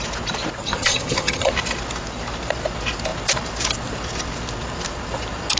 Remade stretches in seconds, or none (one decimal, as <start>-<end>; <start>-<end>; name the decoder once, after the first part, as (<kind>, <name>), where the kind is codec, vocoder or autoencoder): 0.6-1.5 (vocoder, HiFi-GAN)